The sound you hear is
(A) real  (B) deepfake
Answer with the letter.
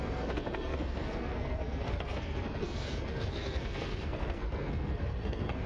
B